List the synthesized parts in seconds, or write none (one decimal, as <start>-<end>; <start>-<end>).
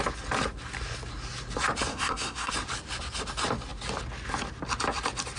1.9-2.5